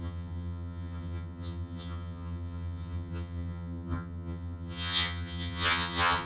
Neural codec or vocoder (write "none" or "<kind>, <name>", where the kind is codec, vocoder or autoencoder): vocoder, HiFi-GAN